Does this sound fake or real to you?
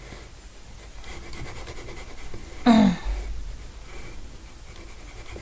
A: real